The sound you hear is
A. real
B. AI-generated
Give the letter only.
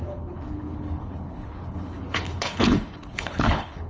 B